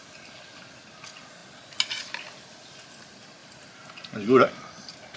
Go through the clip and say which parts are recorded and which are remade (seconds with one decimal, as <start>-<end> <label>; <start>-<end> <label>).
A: 0.0-3.4 recorded; 3.4-3.9 remade; 3.9-5.2 recorded